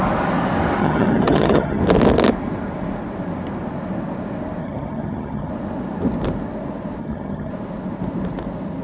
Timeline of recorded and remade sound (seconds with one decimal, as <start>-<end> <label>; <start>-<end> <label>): 0.0-0.8 recorded; 0.8-1.8 remade; 1.8-4.6 recorded; 4.6-5.5 remade; 5.5-7.0 recorded; 7.0-7.5 remade; 7.5-8.8 recorded